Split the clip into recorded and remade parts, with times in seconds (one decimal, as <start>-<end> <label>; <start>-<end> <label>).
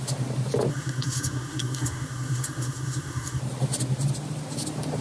0.0-0.7 recorded; 0.7-3.4 remade; 3.4-5.0 recorded